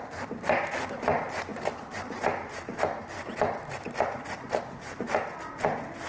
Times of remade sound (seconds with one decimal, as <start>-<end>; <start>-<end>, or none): none